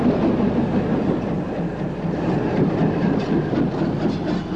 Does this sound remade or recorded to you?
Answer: recorded